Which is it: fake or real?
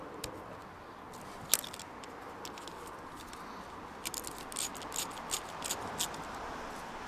real